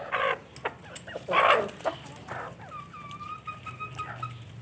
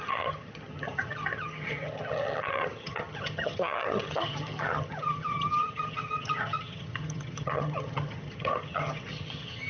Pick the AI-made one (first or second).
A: second